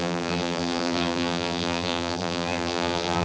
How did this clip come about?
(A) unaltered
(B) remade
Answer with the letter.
B